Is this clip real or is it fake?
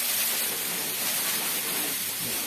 fake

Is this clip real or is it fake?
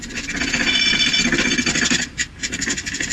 real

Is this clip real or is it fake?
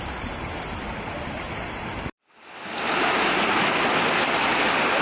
real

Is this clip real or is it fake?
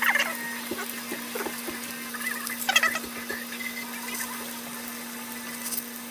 real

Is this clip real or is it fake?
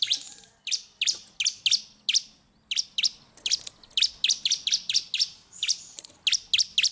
real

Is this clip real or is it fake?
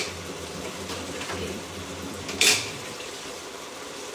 fake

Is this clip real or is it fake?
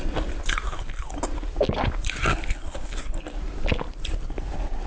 fake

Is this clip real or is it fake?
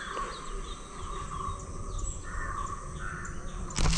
real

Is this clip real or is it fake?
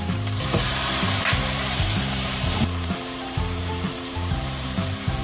fake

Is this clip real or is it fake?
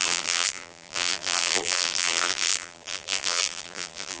fake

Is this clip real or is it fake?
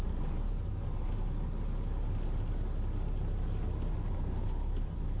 real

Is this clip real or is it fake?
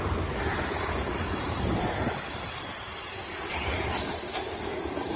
fake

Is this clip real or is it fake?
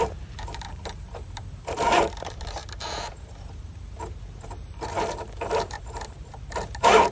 fake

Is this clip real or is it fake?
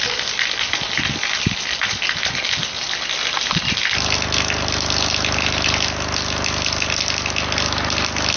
real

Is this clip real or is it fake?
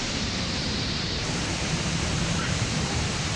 fake